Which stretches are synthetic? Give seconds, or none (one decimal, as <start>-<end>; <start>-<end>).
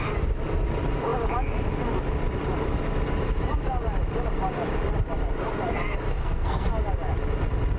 6.1-6.7